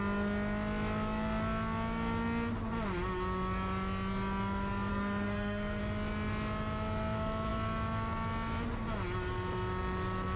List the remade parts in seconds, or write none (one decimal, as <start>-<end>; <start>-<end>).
4.9-5.8